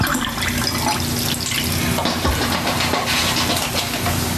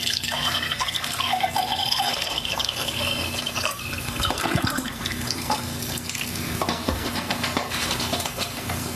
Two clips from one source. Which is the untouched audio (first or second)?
first